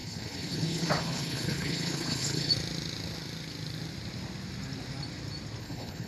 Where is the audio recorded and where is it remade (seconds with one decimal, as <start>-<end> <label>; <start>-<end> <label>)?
0.0-2.5 remade; 2.5-5.6 recorded; 5.6-6.1 remade